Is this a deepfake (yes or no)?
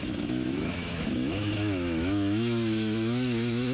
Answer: yes